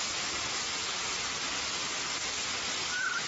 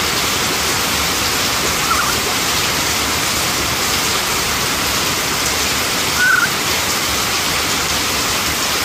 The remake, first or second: second